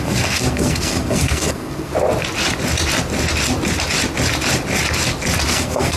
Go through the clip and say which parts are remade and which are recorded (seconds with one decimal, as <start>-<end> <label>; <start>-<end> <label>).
0.0-1.9 remade; 1.9-5.5 recorded; 5.5-6.0 remade